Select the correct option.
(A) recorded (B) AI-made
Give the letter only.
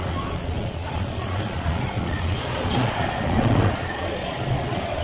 B